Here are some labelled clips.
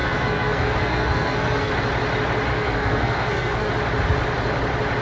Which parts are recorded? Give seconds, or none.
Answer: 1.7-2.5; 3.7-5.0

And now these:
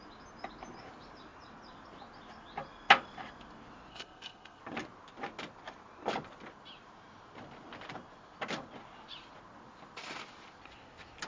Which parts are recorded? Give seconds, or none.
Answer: 0.0-3.9; 4.6-11.3

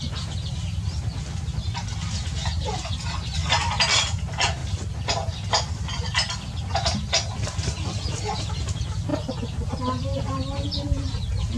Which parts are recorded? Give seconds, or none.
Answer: 0.0-11.6

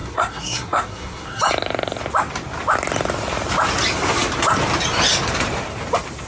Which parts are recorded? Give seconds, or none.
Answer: 1.4-6.3

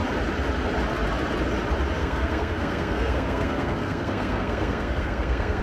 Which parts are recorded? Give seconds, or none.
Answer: 0.0-2.0

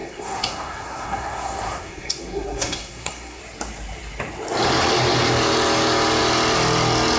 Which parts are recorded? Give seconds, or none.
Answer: 3.4-7.2

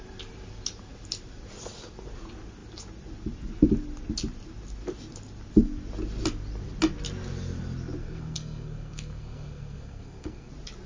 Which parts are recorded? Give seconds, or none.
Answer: 0.0-8.0; 10.5-10.9